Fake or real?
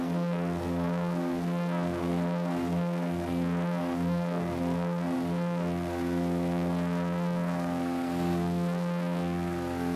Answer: fake